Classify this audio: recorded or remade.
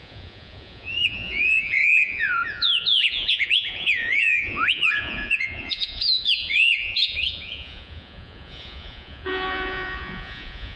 remade